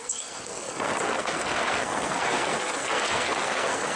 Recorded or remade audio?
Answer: remade